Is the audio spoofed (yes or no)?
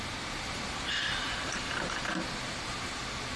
yes